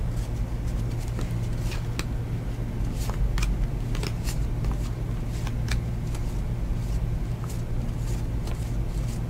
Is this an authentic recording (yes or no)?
yes